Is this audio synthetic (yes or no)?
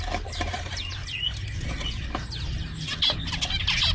no